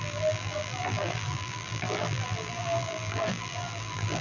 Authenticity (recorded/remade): remade